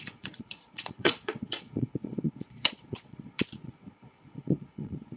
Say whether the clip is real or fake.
fake